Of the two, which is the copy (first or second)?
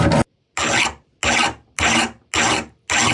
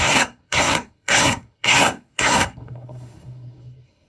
second